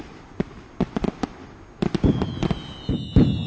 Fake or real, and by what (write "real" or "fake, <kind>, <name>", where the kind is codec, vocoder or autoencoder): real